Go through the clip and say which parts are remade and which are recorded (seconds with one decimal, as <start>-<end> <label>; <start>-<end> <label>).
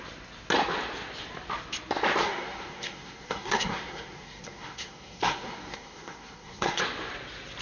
0.0-2.2 recorded; 2.2-6.8 remade; 6.8-7.6 recorded